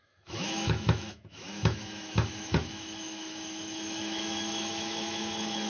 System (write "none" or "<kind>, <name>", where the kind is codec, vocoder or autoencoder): autoencoder, DAC-VAE